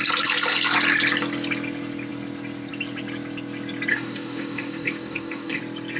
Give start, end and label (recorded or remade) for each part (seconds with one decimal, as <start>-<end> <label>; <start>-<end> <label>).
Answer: 0.0-3.9 recorded; 3.9-5.6 remade; 5.6-6.0 recorded